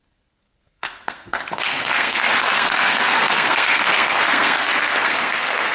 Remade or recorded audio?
remade